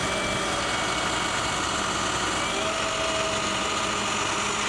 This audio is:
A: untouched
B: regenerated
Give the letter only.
A